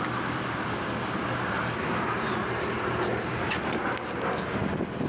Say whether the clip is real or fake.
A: real